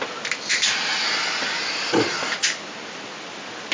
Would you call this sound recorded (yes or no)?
yes